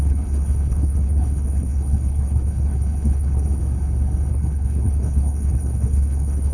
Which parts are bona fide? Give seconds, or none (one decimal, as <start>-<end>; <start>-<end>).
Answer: 3.6-4.3